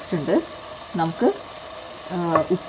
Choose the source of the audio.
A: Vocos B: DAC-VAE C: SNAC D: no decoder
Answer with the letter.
D